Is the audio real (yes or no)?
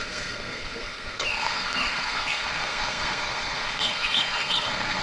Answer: no